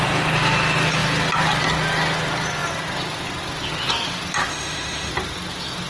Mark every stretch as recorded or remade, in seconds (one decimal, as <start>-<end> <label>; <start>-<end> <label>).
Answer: 0.0-4.5 recorded; 4.5-5.1 remade; 5.1-5.9 recorded